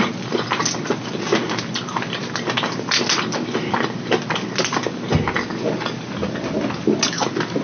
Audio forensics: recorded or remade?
recorded